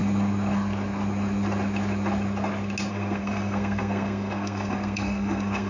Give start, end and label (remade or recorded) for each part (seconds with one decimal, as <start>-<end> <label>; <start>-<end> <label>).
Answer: 0.0-2.9 recorded; 2.9-5.7 remade